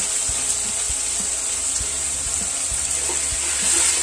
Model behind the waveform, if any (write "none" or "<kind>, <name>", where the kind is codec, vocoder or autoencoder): none